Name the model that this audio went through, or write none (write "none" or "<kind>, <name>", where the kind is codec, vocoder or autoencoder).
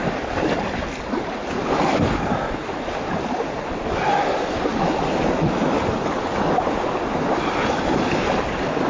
none